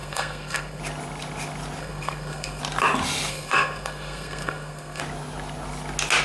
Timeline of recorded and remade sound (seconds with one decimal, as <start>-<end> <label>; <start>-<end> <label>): 0.0-0.8 remade; 0.8-1.8 recorded; 1.8-2.6 remade; 2.6-3.3 recorded; 3.3-5.0 remade; 5.0-6.2 recorded

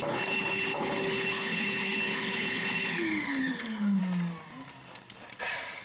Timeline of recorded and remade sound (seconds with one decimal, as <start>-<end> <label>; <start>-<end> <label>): 0.0-4.0 remade; 4.0-5.8 recorded